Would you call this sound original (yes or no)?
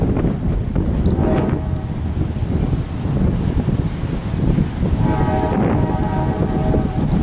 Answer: yes